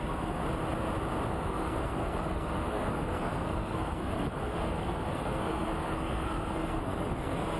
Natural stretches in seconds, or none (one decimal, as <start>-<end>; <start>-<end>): 0.4-1.3